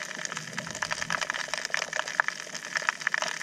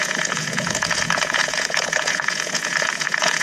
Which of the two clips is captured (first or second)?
first